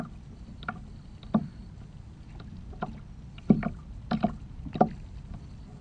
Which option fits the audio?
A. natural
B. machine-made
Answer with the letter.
A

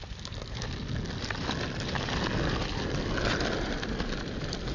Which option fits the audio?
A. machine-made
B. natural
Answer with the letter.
B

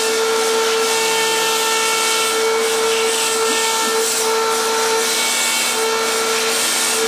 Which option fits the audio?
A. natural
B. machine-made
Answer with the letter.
A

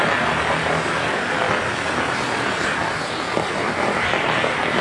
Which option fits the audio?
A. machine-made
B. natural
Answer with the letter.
B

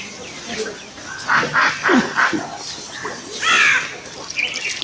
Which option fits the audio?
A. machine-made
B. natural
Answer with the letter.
B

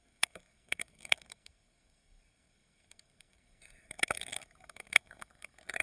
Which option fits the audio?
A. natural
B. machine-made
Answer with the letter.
B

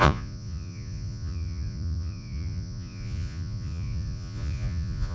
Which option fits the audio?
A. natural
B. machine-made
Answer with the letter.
B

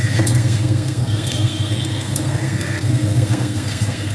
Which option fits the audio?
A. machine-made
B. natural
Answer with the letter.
A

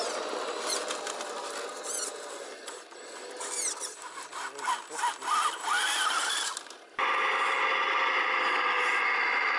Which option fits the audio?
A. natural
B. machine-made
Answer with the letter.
A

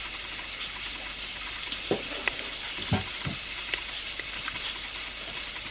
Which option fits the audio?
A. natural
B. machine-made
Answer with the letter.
A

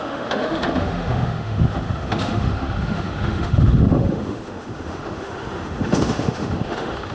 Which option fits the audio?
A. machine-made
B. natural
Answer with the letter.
A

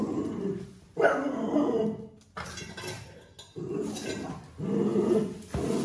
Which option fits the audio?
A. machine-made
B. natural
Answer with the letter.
B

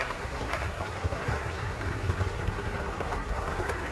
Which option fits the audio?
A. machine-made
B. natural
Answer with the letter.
A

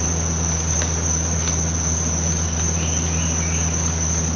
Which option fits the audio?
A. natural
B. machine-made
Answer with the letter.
A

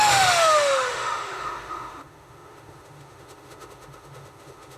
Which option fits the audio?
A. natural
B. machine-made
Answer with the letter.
B